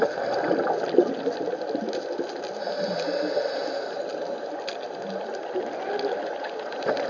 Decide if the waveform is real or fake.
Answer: real